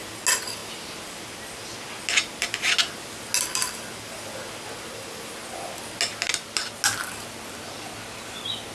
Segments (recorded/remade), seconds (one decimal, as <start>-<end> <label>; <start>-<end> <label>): 0.0-8.7 recorded